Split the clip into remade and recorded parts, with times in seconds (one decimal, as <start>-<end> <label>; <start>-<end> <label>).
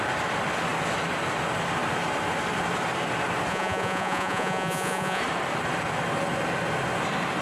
0.0-3.5 recorded; 3.5-5.2 remade; 5.2-7.4 recorded